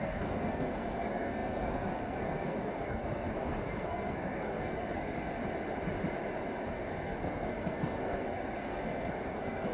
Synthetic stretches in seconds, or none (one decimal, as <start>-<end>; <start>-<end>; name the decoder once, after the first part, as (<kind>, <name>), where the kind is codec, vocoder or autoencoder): 0.0-5.4 (codec, SNAC); 6.7-9.7